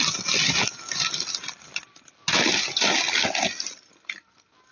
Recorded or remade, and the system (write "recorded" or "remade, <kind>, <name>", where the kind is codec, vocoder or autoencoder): recorded